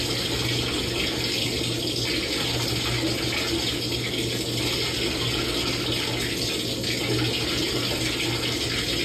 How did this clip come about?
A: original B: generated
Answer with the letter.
A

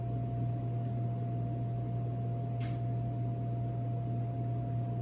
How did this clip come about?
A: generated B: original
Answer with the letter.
B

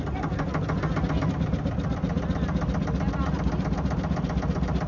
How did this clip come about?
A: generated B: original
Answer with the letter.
B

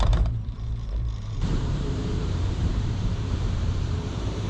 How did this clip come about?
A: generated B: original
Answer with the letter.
A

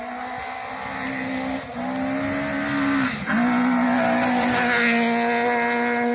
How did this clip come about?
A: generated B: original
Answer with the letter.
B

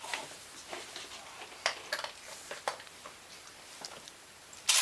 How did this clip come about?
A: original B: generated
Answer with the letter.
A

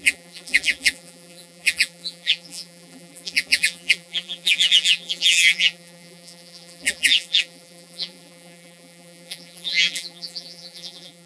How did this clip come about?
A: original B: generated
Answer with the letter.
B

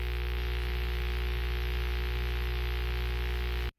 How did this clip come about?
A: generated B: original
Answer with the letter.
B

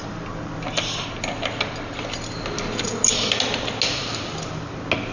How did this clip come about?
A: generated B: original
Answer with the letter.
B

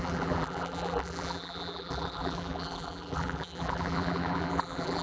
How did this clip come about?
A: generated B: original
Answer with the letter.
A